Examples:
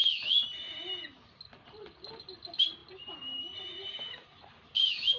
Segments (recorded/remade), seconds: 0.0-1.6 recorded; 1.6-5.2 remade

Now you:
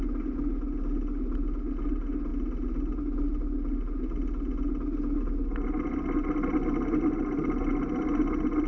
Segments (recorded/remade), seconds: 0.0-8.7 recorded

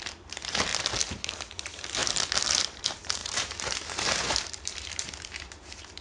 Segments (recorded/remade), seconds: 0.0-0.7 remade; 0.7-1.5 recorded; 1.5-2.0 remade; 2.0-2.7 recorded; 2.7-6.0 remade

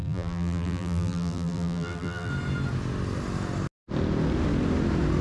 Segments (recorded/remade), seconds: 0.0-2.3 remade; 2.3-5.2 recorded